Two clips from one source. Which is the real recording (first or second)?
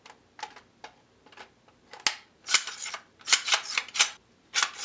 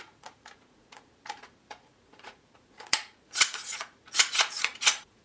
first